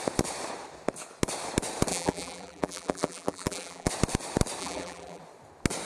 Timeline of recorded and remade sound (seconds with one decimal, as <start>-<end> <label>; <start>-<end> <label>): 0.0-1.9 recorded; 1.9-3.9 remade; 3.9-4.6 recorded; 4.6-5.2 remade; 5.2-5.9 recorded

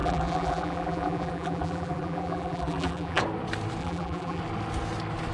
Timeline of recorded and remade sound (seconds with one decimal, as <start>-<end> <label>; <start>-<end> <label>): 0.0-3.2 remade; 3.2-3.8 recorded; 3.8-4.4 remade; 4.4-5.3 recorded

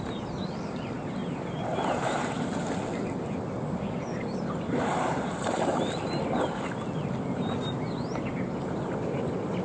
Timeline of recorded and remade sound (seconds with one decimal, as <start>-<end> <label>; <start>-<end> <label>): 0.0-1.2 recorded; 1.2-2.2 remade; 2.2-4.1 recorded; 4.1-6.1 remade; 6.1-9.6 recorded

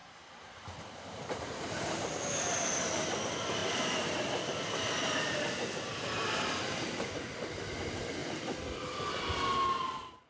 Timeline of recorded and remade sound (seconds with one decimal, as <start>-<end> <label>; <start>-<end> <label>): 0.0-2.4 remade; 2.4-3.6 recorded; 3.6-7.2 remade; 7.2-8.2 recorded; 8.2-9.1 remade; 9.1-10.3 recorded

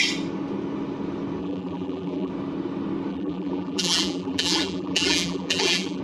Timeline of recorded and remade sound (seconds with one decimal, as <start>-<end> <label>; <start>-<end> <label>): 0.0-1.4 recorded; 1.4-2.3 remade; 2.3-3.1 recorded; 3.1-6.0 remade

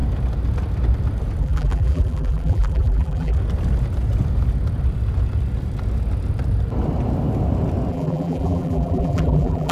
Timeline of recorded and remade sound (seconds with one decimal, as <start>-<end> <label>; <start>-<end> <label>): 0.0-1.4 recorded; 1.4-3.4 remade; 3.4-7.9 recorded; 7.9-9.7 remade